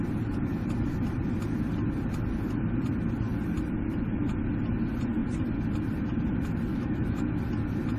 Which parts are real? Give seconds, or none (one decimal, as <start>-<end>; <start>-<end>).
0.0-6.7; 7.3-8.0